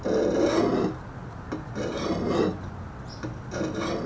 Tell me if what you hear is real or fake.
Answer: real